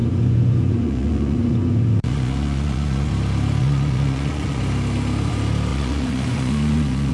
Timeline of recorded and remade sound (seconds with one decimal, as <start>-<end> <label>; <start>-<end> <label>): 0.0-3.1 remade; 3.1-3.6 recorded; 3.6-4.6 remade; 4.6-5.7 recorded; 5.7-7.1 remade